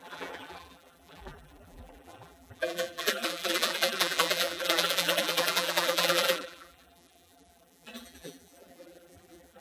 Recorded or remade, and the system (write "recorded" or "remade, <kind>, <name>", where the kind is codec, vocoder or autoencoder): remade, vocoder, BigVGAN v2